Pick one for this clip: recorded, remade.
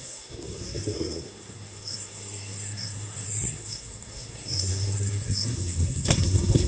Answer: remade